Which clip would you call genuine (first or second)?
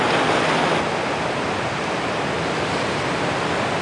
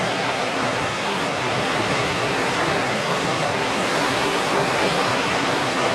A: first